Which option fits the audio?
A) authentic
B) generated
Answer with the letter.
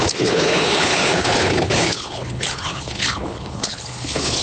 B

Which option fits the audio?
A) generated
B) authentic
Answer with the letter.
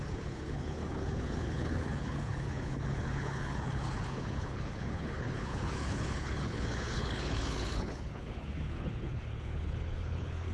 A